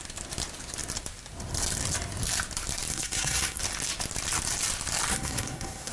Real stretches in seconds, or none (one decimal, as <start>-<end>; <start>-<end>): 0.0-2.9; 3.6-5.1